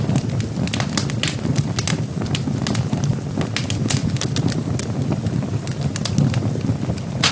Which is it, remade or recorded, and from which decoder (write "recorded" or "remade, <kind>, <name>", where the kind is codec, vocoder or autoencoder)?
recorded